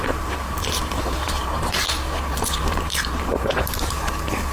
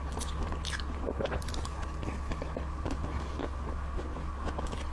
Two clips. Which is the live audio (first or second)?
second